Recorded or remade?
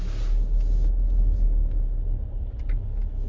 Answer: recorded